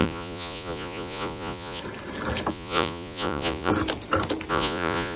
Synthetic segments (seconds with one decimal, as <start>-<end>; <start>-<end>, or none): 0.0-1.8; 2.5-3.7; 4.5-5.2